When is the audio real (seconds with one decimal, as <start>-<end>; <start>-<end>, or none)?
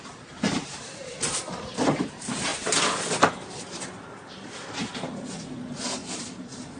0.0-6.0